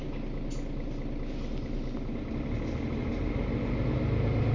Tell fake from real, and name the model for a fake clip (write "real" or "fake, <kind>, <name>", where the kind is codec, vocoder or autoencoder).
real